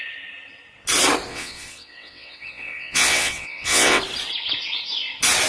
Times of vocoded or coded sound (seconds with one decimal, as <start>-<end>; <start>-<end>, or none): 1.3-4.0